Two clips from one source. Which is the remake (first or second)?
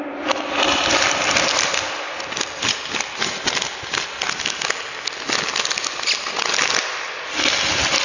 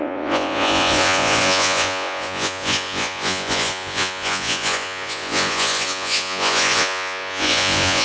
second